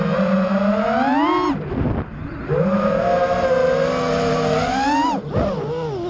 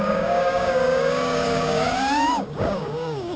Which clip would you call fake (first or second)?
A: second